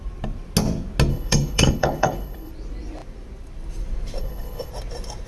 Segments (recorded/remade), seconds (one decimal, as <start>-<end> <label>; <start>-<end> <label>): 0.0-1.1 recorded; 1.1-2.5 remade; 2.5-4.2 recorded; 4.2-4.7 remade; 4.7-5.3 recorded